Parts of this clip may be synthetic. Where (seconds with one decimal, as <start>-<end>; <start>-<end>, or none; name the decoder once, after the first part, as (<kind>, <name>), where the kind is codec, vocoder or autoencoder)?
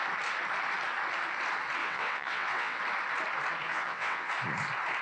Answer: 1.8-2.8 (vocoder, WaveNeXt); 3.7-4.3